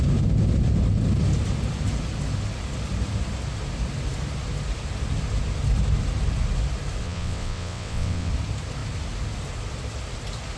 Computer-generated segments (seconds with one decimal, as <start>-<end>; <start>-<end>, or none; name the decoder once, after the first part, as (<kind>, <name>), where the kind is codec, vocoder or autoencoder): 7.0-8.3 (vocoder, WaveNeXt)